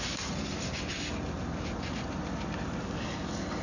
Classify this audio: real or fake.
real